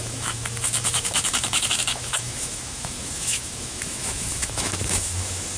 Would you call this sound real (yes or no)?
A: no